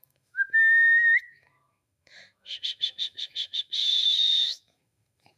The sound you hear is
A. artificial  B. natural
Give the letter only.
A